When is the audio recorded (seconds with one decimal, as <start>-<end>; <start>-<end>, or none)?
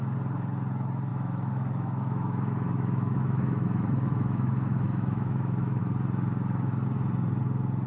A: 0.0-1.1; 5.8-7.9